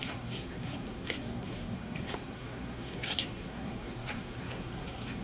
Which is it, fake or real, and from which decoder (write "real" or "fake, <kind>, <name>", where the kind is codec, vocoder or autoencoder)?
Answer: fake, codec, SNAC